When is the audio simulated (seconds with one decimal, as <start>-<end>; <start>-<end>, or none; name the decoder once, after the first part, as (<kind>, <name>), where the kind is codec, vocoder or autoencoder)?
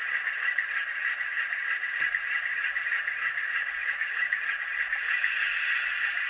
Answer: 3.8-4.4 (autoencoder, DAC-VAE)